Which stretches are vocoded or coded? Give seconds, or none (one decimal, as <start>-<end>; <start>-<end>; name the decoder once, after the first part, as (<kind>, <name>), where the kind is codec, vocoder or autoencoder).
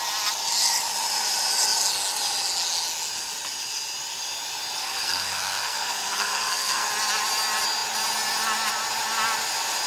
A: 4.8-6.9 (codec, SNAC)